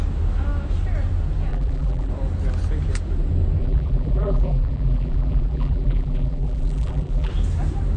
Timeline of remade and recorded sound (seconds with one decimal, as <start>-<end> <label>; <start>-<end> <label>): 0.0-1.5 recorded; 1.5-2.1 remade; 2.1-3.6 recorded; 3.6-7.3 remade; 7.3-8.0 recorded